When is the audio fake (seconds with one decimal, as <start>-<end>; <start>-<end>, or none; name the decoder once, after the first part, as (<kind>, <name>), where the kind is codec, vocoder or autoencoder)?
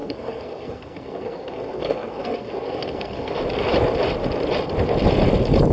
0.0-3.4 (codec, SNAC)